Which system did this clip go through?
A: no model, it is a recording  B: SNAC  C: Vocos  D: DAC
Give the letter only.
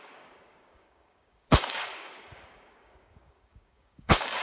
D